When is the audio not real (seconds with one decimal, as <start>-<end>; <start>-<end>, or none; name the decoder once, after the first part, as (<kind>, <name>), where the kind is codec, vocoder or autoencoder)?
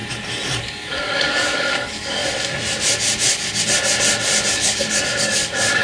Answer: 0.6-2.2 (codec, DAC); 4.5-5.8